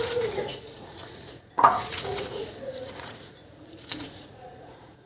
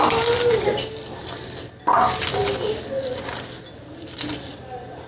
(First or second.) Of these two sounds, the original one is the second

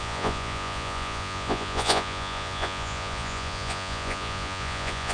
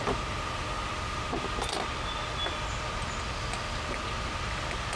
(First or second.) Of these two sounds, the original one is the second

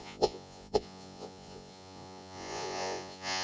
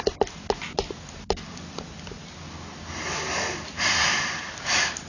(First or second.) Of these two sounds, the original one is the second